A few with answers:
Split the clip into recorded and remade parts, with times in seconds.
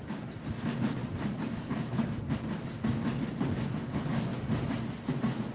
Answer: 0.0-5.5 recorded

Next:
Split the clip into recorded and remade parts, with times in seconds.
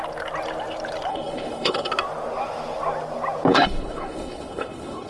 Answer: 0.0-1.1 recorded; 1.1-1.9 remade; 1.9-3.5 recorded; 3.5-5.1 remade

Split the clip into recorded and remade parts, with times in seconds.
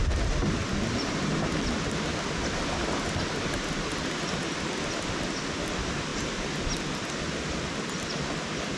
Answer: 0.0-8.8 recorded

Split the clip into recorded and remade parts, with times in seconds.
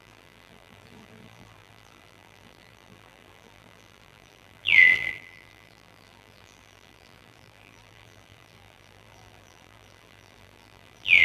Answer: 0.0-11.2 remade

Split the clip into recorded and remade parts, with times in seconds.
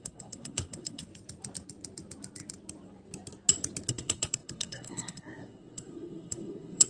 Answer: 0.0-1.1 remade; 1.1-3.9 recorded; 3.9-6.9 remade